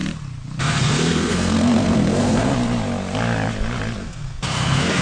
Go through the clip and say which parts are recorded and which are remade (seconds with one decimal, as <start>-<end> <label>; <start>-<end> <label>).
0.0-0.6 recorded; 0.6-2.5 remade; 2.5-4.0 recorded; 4.0-5.0 remade